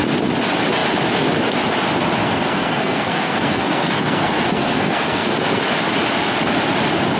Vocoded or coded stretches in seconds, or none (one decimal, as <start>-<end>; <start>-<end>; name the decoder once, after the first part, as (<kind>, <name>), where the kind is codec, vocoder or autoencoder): 2.2-5.6 (codec, SNAC)